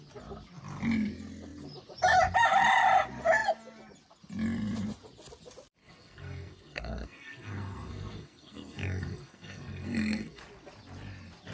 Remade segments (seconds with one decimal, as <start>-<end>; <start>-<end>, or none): 5.8-10.4